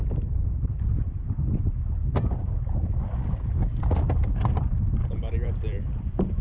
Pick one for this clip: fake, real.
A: real